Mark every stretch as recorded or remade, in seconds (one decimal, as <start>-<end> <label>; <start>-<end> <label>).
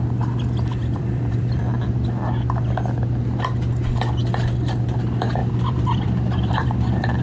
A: 0.0-0.8 recorded; 0.8-1.6 remade; 1.6-5.4 recorded; 5.4-7.2 remade